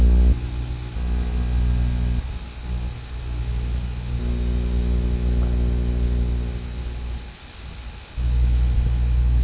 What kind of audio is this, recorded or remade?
recorded